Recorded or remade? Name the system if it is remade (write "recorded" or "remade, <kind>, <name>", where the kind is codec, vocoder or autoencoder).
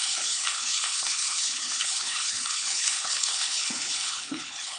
remade, codec, HILCodec